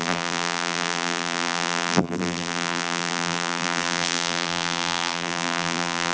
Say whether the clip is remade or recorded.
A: remade